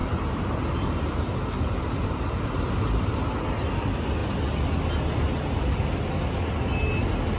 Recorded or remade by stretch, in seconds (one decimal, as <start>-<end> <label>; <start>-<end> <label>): 0.0-7.4 recorded